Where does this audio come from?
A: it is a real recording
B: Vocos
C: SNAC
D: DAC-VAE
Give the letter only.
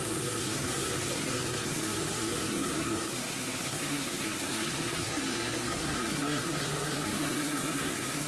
C